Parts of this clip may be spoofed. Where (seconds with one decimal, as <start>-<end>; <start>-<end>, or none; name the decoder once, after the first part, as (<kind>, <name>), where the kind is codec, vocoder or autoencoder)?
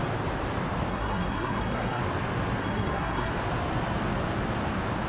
0.9-2.0 (codec, SNAC); 2.6-3.3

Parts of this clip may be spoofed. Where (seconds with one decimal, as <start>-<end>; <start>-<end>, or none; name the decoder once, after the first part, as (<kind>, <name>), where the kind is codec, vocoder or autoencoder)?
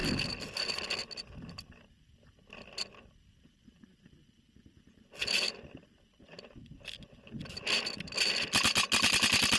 none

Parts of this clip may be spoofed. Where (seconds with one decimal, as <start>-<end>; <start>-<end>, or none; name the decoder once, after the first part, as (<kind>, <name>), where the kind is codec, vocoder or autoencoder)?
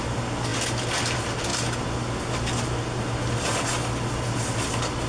none